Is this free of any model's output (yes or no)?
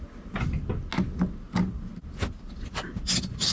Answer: yes